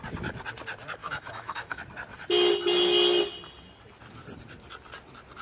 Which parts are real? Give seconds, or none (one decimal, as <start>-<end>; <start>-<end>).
0.0-1.0; 1.8-5.4